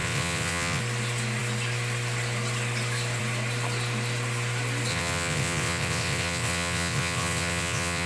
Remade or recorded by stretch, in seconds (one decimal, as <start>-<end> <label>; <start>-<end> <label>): 0.0-0.8 remade; 0.8-4.9 recorded; 4.9-8.1 remade

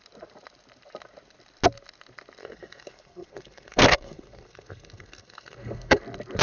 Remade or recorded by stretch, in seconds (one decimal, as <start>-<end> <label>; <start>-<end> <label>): 0.0-2.4 recorded; 2.4-6.0 remade; 6.0-6.4 recorded

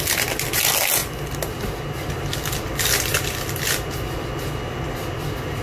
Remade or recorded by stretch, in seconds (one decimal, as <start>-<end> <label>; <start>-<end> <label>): 0.0-5.6 recorded

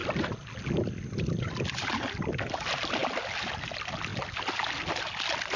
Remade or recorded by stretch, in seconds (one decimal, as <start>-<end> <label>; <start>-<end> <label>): 0.0-5.6 recorded

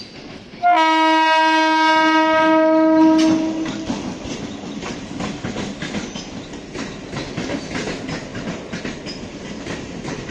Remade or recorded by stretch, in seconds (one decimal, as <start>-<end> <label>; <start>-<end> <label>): 0.0-8.3 recorded; 8.3-10.3 remade

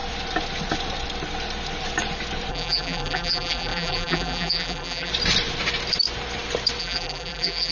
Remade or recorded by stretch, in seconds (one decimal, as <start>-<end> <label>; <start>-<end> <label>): 0.0-2.5 recorded; 2.5-5.1 remade; 5.1-6.8 recorded; 6.8-7.7 remade